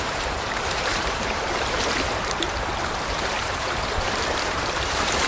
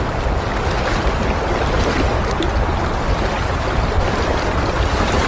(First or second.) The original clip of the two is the second